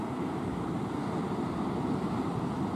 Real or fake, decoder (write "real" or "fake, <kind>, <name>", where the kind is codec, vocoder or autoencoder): fake, vocoder, BigVGAN v2